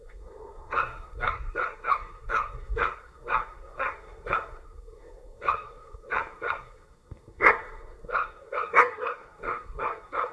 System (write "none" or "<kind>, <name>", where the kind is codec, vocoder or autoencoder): codec, SNAC